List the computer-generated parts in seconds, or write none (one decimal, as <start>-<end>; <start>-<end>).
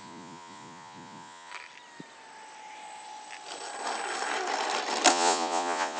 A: 0.0-1.5; 5.1-6.0